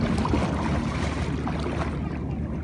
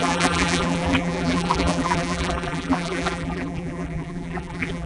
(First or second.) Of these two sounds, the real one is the first